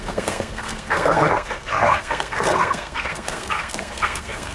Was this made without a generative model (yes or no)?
no